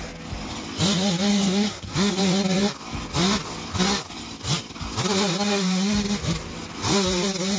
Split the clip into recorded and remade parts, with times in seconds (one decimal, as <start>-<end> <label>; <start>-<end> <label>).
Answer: 0.0-1.3 recorded; 1.3-2.2 remade; 2.2-7.6 recorded